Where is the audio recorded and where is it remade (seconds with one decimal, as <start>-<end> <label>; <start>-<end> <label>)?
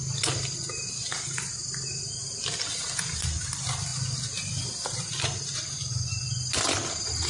0.0-7.3 recorded